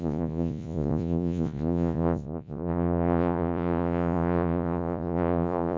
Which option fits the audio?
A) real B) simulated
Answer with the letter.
B